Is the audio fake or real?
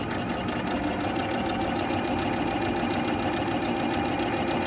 real